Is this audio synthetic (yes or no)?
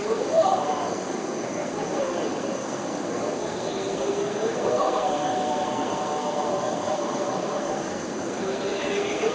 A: yes